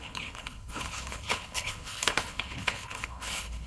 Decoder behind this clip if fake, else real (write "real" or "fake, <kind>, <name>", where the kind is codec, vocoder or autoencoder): fake, codec, HILCodec